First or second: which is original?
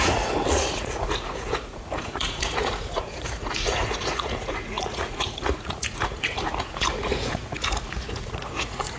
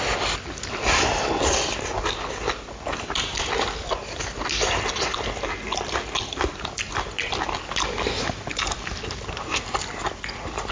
second